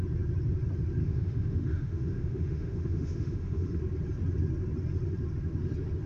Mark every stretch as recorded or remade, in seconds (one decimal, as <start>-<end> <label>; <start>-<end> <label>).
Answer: 0.0-1.0 recorded; 1.0-3.8 remade; 3.8-6.1 recorded

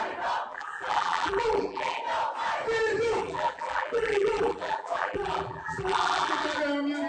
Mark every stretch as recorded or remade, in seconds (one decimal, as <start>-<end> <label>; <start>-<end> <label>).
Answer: 0.0-0.5 recorded; 0.5-2.0 remade; 2.0-3.2 recorded; 3.2-6.6 remade; 6.6-7.1 recorded

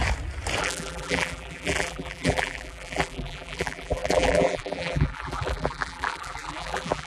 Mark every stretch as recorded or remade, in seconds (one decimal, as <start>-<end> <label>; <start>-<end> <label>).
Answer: 0.0-0.6 recorded; 0.6-7.1 remade

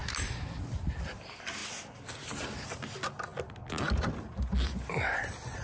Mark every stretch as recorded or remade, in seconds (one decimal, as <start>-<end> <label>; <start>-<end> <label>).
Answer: 0.0-5.6 recorded

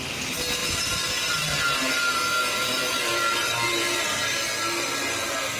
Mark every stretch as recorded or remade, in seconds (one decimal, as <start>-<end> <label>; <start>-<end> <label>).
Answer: 0.0-0.6 recorded; 0.6-4.0 remade; 4.0-5.6 recorded

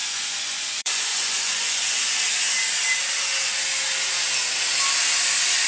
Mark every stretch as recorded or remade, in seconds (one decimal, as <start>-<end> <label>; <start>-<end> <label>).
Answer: 0.0-2.1 remade; 2.1-5.7 recorded